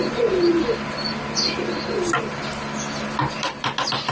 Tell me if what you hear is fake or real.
real